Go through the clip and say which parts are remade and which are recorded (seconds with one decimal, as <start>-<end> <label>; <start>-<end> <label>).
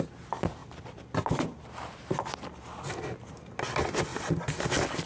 0.0-0.6 recorded; 0.6-2.6 remade; 2.6-4.1 recorded; 4.1-4.6 remade; 4.6-5.1 recorded